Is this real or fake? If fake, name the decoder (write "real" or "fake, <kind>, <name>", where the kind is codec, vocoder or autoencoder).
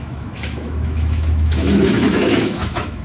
fake, autoencoder, DAC-VAE